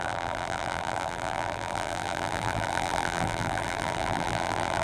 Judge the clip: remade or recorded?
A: remade